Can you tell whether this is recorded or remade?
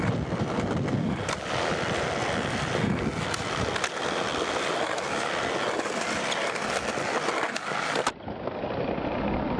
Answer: recorded